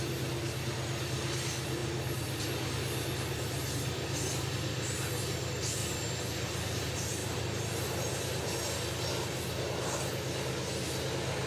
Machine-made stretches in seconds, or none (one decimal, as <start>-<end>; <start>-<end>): none

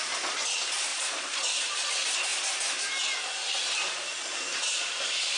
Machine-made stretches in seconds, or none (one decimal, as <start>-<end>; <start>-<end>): 0.9-1.9

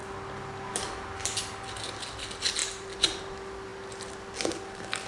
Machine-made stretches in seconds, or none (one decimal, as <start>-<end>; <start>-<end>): none

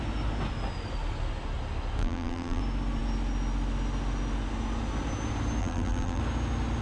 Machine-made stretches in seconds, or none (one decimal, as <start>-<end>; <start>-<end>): 2.0-2.6; 5.6-6.2

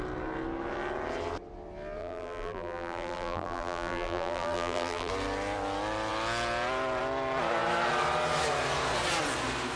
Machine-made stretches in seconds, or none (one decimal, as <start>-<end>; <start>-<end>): 2.0-5.1

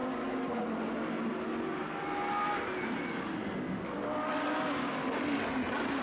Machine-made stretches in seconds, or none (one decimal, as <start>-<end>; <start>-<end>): none

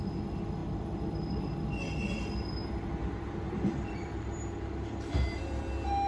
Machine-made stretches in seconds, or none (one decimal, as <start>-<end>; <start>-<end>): 3.0-5.6